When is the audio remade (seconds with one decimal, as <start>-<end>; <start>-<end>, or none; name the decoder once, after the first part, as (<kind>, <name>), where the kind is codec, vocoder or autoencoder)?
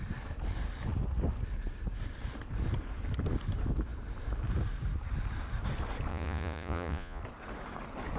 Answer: 6.1-7.2 (vocoder, Vocos)